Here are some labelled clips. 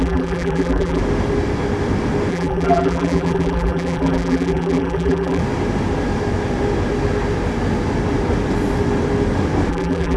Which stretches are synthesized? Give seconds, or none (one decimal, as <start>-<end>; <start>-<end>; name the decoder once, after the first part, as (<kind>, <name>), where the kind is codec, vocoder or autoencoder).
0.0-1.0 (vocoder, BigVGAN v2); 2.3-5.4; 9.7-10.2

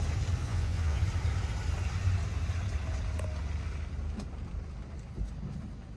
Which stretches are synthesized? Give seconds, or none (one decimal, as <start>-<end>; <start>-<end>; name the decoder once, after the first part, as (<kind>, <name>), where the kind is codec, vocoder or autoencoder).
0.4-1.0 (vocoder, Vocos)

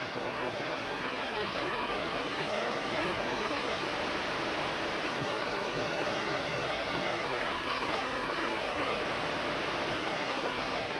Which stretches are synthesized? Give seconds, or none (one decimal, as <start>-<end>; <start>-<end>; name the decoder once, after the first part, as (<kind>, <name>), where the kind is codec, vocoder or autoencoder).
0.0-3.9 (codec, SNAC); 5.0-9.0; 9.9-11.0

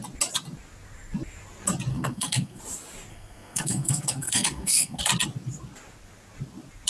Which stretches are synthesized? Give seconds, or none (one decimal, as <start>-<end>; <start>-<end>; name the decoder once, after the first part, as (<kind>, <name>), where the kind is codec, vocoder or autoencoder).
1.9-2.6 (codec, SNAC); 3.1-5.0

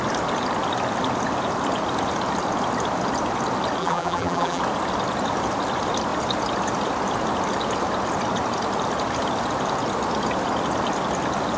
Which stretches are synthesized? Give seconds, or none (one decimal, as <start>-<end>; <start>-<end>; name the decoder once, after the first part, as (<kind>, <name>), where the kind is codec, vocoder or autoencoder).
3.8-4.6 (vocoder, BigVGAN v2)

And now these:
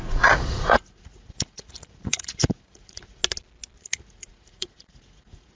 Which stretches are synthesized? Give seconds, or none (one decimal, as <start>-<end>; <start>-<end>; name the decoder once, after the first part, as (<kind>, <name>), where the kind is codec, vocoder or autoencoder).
0.0-3.2 (vocoder, Vocos); 3.8-5.6

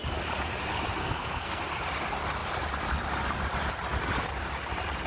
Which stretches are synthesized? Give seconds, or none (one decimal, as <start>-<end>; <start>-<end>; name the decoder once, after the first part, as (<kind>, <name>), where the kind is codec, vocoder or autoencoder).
1.0-1.6 (codec, SNAC)

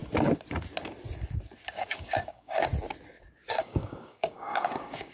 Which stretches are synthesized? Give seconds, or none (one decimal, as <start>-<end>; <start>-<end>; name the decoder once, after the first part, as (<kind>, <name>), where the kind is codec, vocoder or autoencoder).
1.8-2.7 (codec, DAC); 3.5-5.1